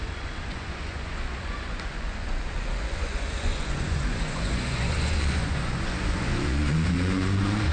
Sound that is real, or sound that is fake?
fake